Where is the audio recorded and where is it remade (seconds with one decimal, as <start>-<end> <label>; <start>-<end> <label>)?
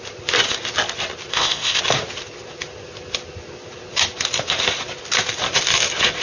0.0-1.3 recorded; 1.3-1.8 remade; 1.8-6.2 recorded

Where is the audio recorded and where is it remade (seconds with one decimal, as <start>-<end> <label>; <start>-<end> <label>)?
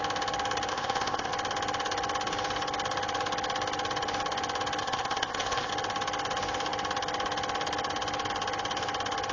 0.0-0.7 recorded; 0.7-1.3 remade; 1.3-4.8 recorded; 4.8-5.7 remade; 5.7-9.3 recorded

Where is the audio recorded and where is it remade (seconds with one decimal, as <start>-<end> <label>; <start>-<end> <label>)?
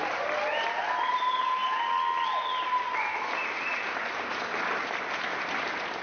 0.0-6.0 recorded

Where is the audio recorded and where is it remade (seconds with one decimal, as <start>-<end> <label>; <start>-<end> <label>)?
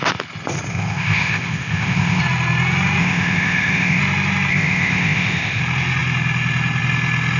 0.0-0.7 recorded; 0.7-2.2 remade; 2.2-3.0 recorded; 3.0-4.0 remade; 4.0-4.5 recorded; 4.5-5.6 remade; 5.6-7.4 recorded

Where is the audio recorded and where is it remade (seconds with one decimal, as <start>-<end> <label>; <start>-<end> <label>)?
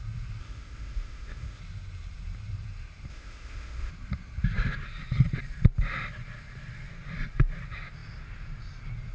0.0-0.4 recorded; 0.4-1.6 remade; 1.6-3.1 recorded; 3.1-3.9 remade; 3.9-9.1 recorded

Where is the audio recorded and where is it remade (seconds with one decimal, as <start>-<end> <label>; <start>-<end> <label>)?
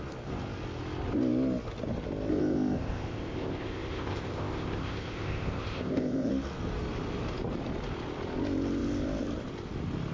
0.0-2.3 recorded; 2.3-6.3 remade; 6.3-10.1 recorded